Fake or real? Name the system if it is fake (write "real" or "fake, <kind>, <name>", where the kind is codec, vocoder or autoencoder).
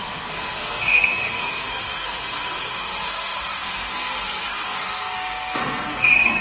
fake, codec, SNAC